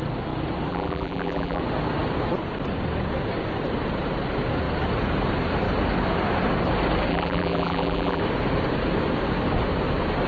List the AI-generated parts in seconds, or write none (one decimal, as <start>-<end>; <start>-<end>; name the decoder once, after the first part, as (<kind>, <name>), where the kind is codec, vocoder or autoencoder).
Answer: 0.7-1.6 (vocoder, BigVGAN v2); 7.1-8.2